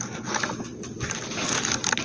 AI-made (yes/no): no